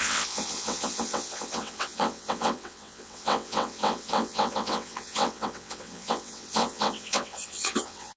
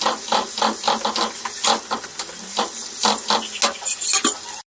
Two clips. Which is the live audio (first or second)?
second